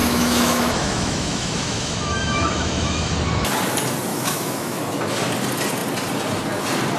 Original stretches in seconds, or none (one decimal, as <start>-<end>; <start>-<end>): 3.1-4.1; 4.8-7.0